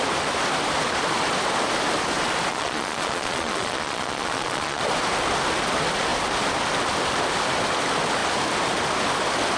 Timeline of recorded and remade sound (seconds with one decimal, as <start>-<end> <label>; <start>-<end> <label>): 0.0-2.5 recorded; 2.5-4.8 remade; 4.8-9.6 recorded